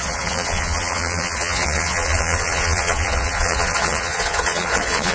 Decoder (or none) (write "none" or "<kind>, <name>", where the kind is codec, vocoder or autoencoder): vocoder, Vocos